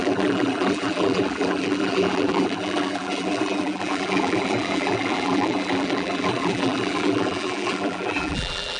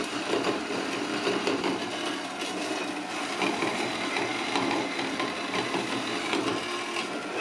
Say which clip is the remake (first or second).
first